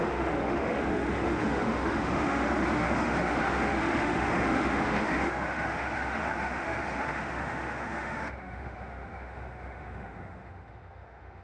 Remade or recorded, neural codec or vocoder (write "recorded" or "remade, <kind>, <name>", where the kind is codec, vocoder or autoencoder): remade, autoencoder, DAC-VAE